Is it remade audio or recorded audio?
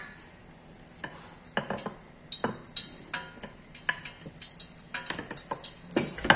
recorded